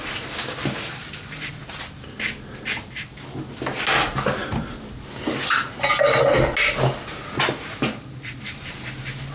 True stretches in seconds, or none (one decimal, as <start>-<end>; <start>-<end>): 0.0-9.3